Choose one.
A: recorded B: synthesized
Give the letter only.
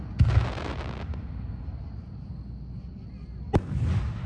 A